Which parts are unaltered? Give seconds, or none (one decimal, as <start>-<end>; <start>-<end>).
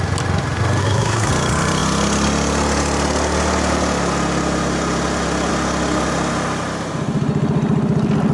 0.0-0.8; 1.3-8.3